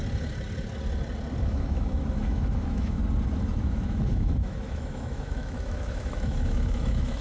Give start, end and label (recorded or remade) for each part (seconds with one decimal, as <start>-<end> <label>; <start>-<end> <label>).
0.0-1.4 recorded; 1.4-3.0 remade; 3.0-3.6 recorded; 3.6-7.2 remade